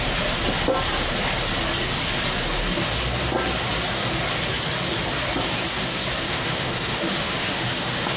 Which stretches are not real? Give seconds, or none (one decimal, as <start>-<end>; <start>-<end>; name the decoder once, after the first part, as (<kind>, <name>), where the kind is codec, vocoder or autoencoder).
6.2-8.2 (autoencoder, DAC-VAE)